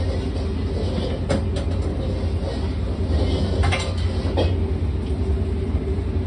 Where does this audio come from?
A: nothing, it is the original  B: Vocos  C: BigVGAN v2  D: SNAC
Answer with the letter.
A